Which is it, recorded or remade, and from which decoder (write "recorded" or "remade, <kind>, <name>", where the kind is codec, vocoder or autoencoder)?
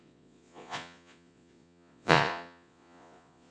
remade, vocoder, Vocos